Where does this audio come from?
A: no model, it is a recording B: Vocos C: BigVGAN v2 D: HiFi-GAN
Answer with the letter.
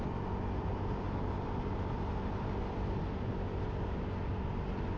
A